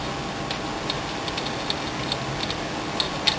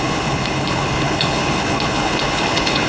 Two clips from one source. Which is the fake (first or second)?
second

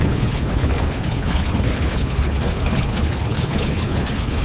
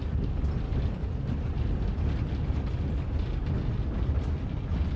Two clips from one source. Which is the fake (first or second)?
first